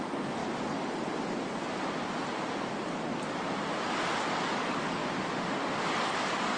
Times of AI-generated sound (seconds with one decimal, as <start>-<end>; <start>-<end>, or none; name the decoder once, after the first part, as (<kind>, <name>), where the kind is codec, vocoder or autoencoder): 0.0-0.4 (codec, DAC); 4.1-5.0; 6.0-6.6

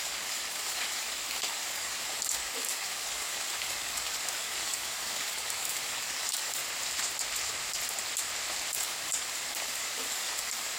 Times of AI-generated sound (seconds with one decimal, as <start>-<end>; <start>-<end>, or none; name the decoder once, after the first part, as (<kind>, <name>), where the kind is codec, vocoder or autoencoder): 0.0-6.6 (codec, DAC); 8.7-10.8

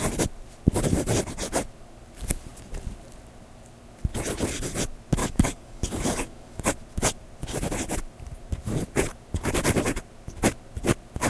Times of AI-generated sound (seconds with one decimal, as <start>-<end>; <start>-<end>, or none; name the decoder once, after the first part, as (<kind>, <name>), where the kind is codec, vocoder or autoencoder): 5.2-6.6 (codec, DAC)

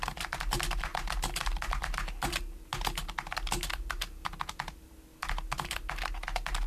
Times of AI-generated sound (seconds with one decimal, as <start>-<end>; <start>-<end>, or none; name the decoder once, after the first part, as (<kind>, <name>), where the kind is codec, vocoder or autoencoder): none

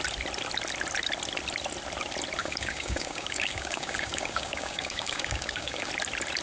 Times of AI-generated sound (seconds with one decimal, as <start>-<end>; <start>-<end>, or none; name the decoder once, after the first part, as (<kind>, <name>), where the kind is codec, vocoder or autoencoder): 2.4-5.9 (codec, DAC)

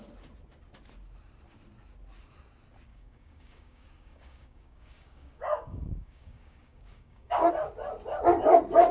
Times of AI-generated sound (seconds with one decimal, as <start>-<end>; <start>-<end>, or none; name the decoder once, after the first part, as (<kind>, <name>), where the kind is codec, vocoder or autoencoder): 2.9-7.5 (codec, DAC)